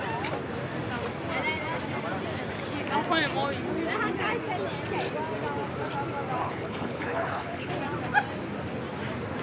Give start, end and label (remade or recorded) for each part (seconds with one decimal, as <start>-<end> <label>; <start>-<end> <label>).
0.0-6.4 recorded; 6.4-7.7 remade; 7.7-9.4 recorded